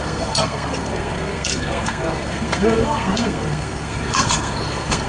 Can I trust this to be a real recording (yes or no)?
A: no